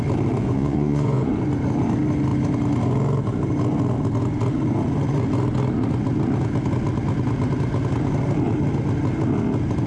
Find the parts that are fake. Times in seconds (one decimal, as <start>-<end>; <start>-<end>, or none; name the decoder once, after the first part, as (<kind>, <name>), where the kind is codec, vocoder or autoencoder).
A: 0.4-1.3 (vocoder, Vocos)